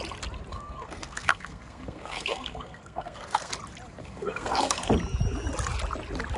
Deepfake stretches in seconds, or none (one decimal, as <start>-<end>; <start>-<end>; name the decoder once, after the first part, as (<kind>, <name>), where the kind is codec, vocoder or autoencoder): 0.5-3.5 (codec, SNAC); 4.0-4.9